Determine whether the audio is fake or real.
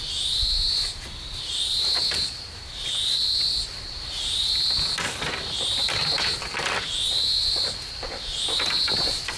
real